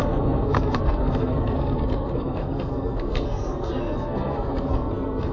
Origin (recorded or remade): remade